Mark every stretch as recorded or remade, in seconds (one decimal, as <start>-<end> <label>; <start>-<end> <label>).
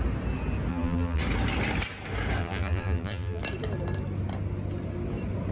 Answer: 0.0-0.7 recorded; 0.7-1.2 remade; 1.2-2.4 recorded; 2.4-3.4 remade; 3.4-5.5 recorded